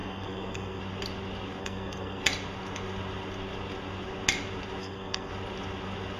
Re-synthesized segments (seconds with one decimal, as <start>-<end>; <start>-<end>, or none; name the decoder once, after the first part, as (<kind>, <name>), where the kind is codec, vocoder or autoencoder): 0.0-0.8 (codec, SNAC); 1.6-2.2; 4.8-5.3